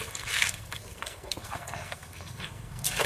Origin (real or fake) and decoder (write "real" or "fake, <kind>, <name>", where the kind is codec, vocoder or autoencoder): fake, codec, SNAC